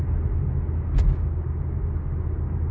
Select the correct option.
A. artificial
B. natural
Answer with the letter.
B